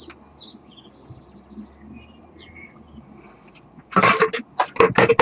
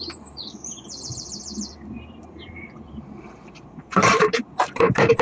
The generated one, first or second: second